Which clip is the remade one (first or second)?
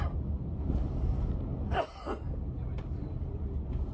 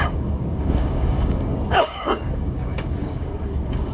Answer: second